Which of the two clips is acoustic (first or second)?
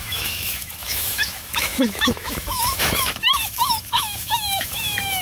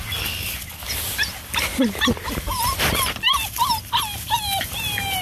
second